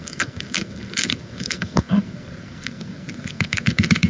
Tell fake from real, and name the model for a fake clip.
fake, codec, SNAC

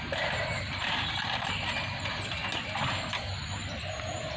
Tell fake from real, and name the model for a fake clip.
real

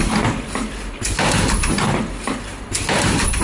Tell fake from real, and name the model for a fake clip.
real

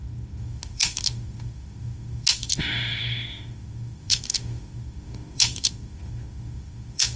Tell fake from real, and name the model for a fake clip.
fake, autoencoder, DAC-VAE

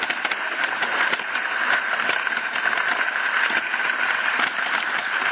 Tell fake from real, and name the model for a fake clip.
real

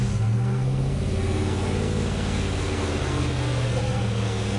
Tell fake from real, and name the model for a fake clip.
fake, codec, SNAC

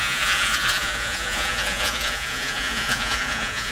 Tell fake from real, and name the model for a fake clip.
fake, vocoder, Vocos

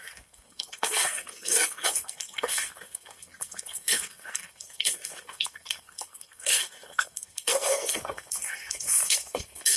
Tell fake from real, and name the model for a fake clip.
fake, codec, SNAC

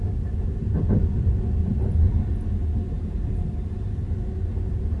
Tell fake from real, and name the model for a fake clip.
real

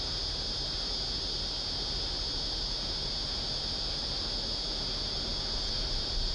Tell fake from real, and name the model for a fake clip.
real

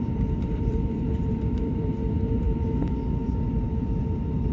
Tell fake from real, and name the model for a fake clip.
fake, vocoder, BigVGAN v2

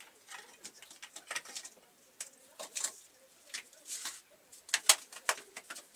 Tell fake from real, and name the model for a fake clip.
real